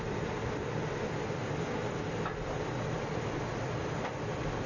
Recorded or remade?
recorded